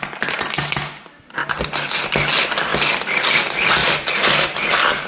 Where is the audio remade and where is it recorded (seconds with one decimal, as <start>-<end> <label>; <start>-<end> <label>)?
0.0-1.4 recorded; 1.4-2.0 remade; 2.0-3.8 recorded; 3.8-5.1 remade